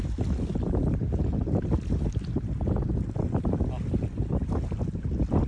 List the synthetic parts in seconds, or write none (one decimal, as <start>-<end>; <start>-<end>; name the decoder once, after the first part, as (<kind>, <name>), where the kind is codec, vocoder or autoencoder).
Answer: none